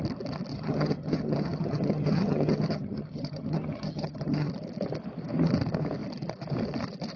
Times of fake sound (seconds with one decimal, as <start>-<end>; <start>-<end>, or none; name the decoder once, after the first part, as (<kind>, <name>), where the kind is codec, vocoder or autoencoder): 0.5-4.5 (vocoder, HiFi-GAN)